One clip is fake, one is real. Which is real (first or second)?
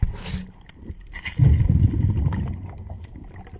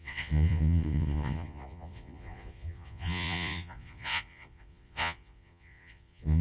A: first